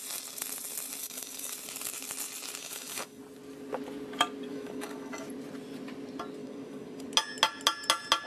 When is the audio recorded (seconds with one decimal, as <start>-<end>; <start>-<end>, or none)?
0.0-1.0; 1.5-2.6; 3.2-4.5; 5.1-6.4; 7.0-8.3

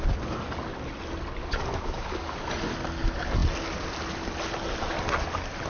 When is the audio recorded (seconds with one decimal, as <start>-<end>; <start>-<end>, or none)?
0.0-1.4; 2.5-5.7

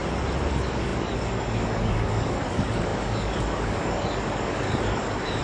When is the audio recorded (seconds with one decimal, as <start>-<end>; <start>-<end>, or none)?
0.0-0.5

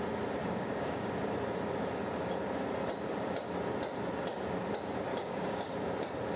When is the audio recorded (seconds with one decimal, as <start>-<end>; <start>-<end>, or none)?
0.0-0.4; 1.1-5.1; 5.7-6.4

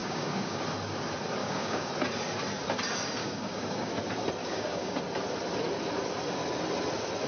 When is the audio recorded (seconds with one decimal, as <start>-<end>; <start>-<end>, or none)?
0.6-1.4; 1.9-3.2; 3.9-4.4; 5.0-7.3

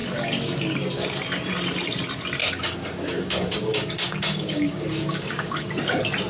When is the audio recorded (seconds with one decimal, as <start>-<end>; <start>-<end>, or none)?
0.0-2.4; 5.7-6.3

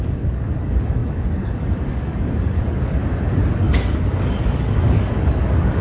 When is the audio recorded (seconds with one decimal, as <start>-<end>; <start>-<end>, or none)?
3.0-3.6